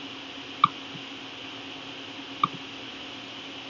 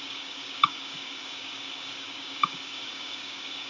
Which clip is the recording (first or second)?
first